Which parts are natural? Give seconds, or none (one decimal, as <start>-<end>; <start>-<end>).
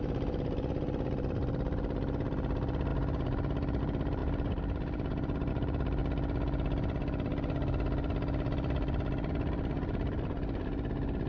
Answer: 6.0-9.3